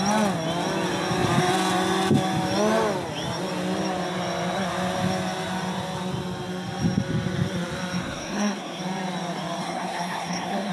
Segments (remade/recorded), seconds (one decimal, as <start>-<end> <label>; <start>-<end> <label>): 0.0-8.0 recorded; 8.0-8.8 remade; 8.8-9.6 recorded; 9.6-10.7 remade